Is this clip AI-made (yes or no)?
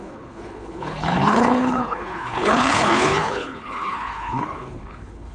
yes